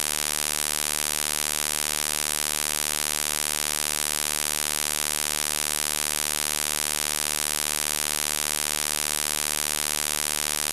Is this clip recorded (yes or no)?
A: yes